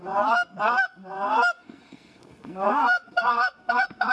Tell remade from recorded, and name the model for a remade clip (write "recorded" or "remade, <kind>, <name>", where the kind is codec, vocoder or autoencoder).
remade, codec, SNAC